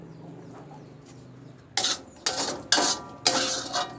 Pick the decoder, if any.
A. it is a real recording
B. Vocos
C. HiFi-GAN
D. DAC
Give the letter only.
A